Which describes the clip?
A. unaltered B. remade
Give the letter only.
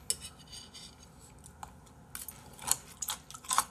A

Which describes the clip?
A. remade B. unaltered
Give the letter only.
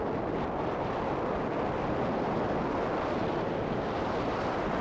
B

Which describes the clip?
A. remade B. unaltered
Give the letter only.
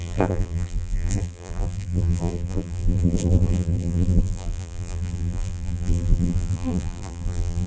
A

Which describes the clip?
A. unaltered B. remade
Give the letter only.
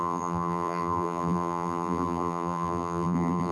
B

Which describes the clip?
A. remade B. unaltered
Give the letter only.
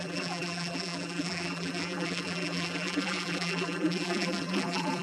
A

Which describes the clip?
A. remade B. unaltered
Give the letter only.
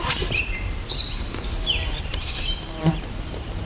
A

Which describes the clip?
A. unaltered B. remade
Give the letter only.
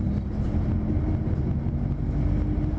A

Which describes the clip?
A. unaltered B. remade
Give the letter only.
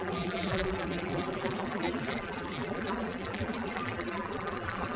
B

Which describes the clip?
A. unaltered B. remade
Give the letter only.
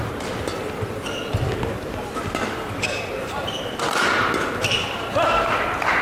A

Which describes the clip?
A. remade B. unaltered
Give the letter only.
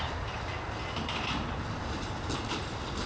B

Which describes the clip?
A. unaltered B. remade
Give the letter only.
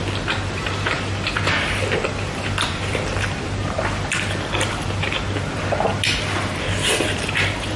B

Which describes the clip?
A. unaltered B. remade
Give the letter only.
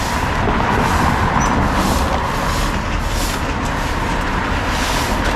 A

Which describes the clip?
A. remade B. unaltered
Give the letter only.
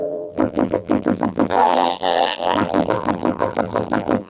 A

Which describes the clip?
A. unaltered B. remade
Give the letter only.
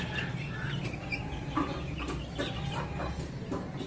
A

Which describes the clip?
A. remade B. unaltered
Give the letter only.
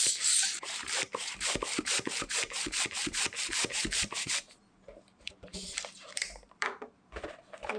A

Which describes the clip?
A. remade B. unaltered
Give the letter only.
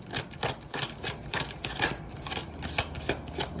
B